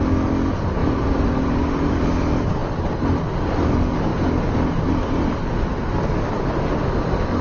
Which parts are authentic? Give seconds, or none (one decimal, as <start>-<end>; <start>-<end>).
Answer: 0.0-0.8; 1.9-7.4